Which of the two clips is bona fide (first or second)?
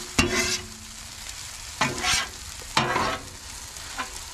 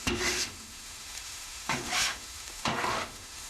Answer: first